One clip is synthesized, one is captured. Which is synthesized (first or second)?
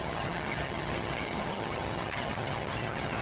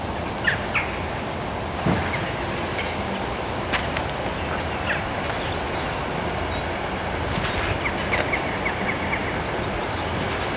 first